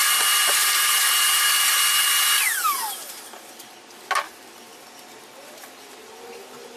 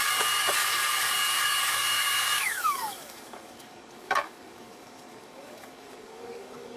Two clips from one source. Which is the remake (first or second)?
second